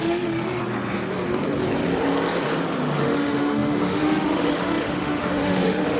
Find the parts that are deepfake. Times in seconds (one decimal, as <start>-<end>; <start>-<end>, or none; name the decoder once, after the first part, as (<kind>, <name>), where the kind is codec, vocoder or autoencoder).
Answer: 0.0-0.6 (autoencoder, DAC-VAE); 3.0-6.0